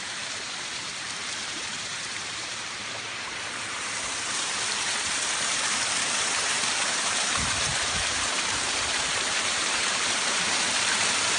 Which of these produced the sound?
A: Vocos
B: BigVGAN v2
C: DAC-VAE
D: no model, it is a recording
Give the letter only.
B